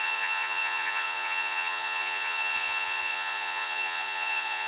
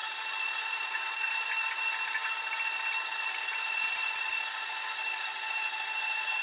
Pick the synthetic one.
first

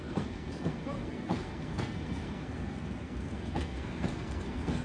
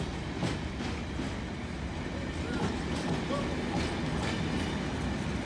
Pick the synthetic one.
first